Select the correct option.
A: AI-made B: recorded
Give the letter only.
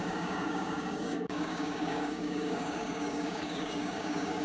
A